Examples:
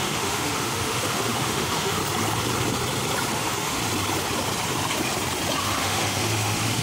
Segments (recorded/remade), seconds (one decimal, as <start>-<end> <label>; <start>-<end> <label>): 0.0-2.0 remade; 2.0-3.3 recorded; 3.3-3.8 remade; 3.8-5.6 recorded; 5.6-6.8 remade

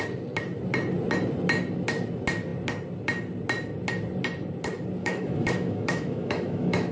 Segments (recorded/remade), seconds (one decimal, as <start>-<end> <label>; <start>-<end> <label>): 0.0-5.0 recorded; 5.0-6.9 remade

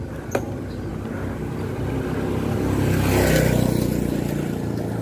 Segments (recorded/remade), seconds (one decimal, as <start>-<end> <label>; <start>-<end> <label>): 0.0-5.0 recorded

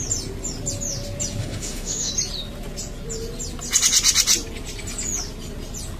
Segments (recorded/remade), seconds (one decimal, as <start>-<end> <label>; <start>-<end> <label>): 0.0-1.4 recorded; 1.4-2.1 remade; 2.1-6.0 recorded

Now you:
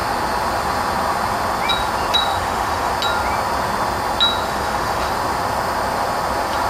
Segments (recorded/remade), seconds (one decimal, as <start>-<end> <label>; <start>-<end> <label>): 0.0-2.3 recorded; 2.3-2.9 remade; 2.9-4.4 recorded; 4.4-5.1 remade; 5.1-6.7 recorded